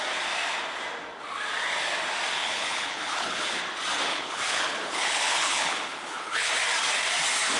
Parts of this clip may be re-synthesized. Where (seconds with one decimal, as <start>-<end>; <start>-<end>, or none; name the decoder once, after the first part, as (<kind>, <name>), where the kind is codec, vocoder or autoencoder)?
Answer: 2.4-3.6 (codec, HILCodec); 4.1-6.5